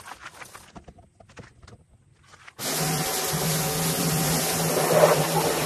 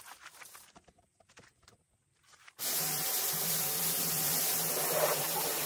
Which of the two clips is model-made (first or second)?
second